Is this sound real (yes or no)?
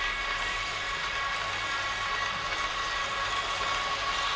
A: yes